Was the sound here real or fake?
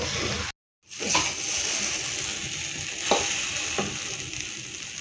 real